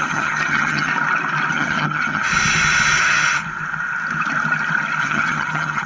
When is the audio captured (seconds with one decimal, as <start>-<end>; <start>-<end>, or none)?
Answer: 0.9-1.5; 2.3-3.0; 3.4-5.0